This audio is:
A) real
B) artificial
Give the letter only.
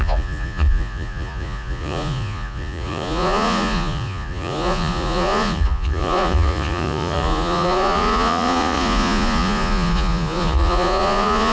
B